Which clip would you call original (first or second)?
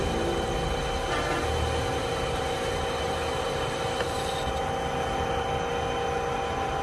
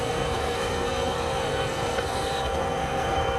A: first